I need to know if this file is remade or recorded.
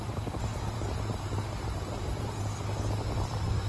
remade